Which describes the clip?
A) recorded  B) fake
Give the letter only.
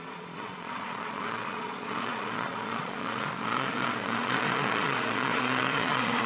B